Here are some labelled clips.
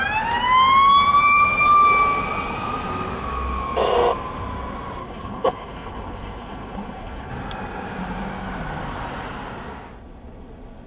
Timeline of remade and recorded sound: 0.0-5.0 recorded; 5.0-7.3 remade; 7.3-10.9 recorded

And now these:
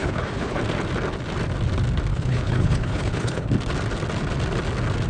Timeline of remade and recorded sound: 0.0-0.6 remade; 0.6-2.1 recorded; 2.1-3.5 remade; 3.5-5.1 recorded

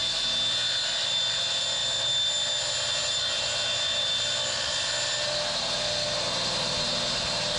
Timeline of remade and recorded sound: 0.0-7.6 recorded

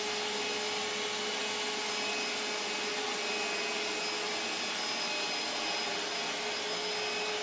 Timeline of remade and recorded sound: 0.0-7.4 recorded

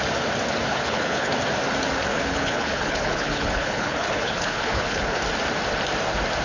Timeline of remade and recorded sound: 0.0-0.7 recorded; 0.7-1.3 remade; 1.3-2.1 recorded; 2.1-5.2 remade; 5.2-6.4 recorded

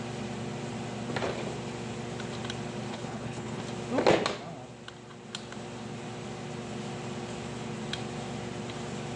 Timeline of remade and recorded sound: 0.0-2.9 recorded; 2.9-3.6 remade; 3.6-9.2 recorded

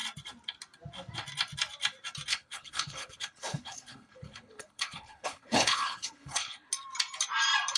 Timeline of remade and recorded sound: 0.0-2.3 recorded; 2.3-6.7 remade; 6.7-7.8 recorded

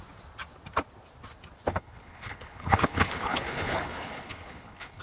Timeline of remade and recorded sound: 0.0-1.7 recorded; 1.7-5.0 remade